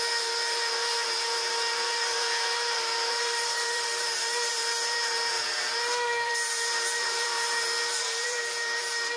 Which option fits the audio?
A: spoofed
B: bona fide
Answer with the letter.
A